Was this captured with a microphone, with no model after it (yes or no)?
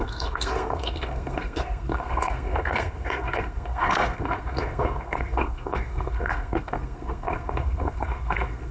no